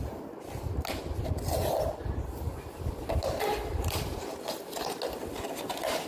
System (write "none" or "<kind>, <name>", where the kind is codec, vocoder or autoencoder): none